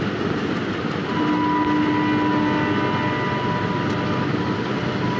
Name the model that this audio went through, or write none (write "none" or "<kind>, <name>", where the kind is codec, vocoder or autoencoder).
none